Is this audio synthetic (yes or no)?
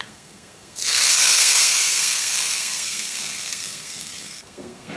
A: yes